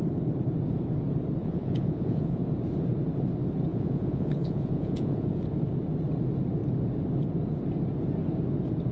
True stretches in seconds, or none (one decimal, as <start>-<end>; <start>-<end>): 0.0-1.4; 2.4-3.7; 5.4-8.9